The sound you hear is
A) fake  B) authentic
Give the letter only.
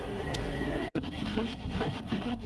A